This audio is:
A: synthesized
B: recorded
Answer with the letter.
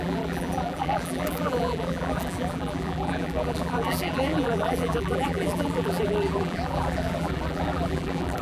A